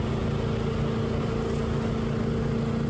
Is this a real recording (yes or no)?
yes